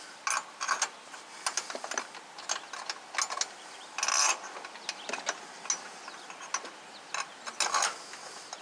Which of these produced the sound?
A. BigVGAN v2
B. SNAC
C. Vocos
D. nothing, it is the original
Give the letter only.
D